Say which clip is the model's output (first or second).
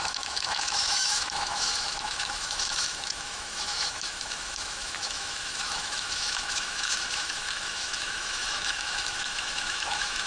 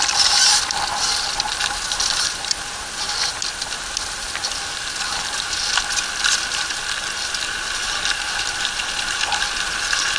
first